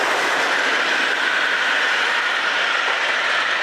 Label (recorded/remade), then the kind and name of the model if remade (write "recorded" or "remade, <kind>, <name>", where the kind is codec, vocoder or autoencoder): recorded